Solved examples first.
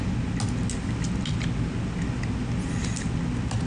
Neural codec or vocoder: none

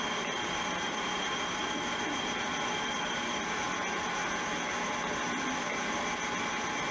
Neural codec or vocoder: none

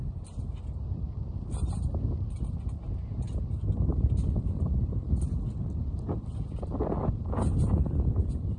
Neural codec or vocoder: none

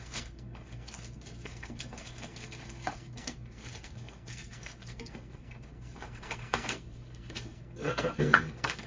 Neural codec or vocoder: codec, SNAC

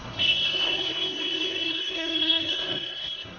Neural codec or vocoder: codec, SNAC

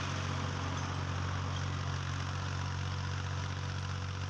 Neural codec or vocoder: none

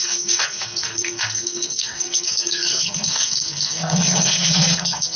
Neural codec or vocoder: codec, SNAC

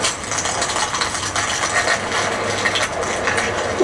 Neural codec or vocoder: none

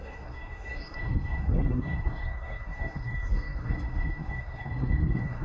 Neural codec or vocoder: codec, SNAC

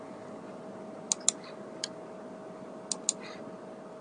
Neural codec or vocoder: none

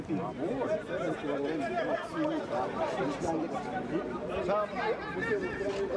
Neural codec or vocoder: none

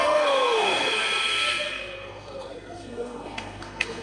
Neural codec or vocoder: codec, SNAC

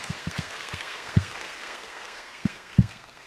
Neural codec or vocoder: codec, SNAC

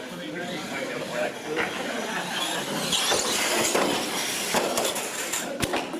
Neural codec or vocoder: none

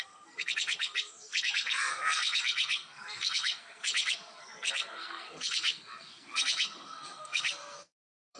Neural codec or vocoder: codec, SNAC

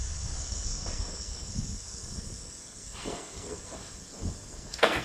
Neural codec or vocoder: codec, SNAC